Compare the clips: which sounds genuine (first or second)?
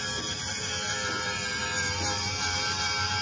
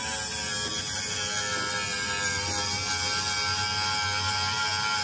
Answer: second